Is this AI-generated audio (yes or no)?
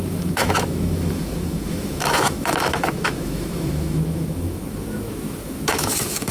yes